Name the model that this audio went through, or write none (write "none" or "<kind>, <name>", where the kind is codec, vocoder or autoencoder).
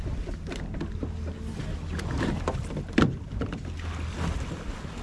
none